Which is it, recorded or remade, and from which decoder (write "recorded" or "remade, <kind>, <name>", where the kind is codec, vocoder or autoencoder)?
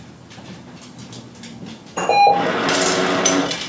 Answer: recorded